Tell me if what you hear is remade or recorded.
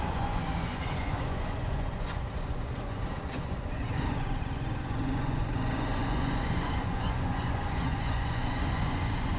remade